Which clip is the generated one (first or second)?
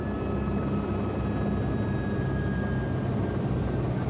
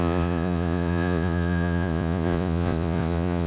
second